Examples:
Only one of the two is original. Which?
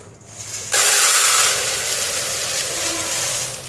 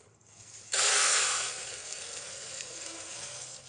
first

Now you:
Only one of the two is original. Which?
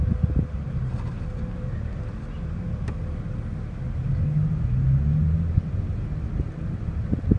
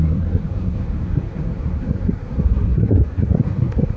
first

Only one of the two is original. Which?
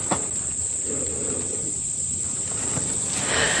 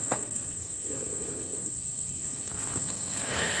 first